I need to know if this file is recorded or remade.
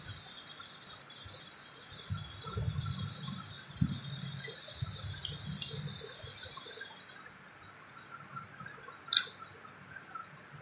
recorded